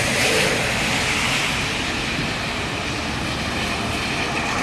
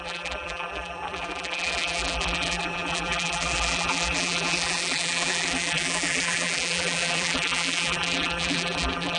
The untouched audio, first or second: first